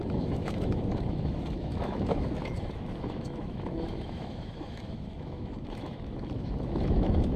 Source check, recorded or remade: remade